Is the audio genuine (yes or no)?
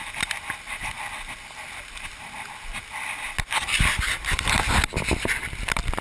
yes